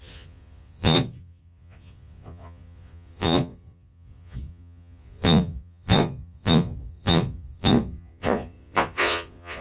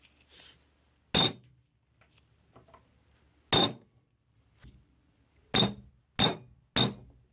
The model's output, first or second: first